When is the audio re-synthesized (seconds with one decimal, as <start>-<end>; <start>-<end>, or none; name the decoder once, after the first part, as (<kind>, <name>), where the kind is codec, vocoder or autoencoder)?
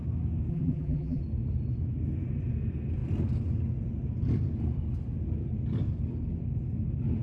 0.5-1.2 (vocoder, BigVGAN v2)